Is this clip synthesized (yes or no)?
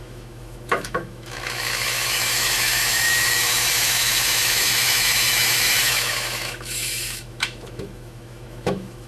yes